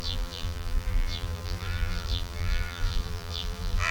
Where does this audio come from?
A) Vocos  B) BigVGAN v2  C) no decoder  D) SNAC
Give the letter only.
B